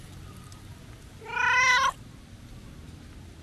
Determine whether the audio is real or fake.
real